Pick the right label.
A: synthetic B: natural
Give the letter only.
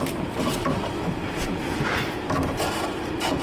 A